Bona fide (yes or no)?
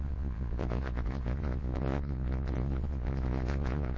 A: no